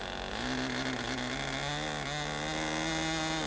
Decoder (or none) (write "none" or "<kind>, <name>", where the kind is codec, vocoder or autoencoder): none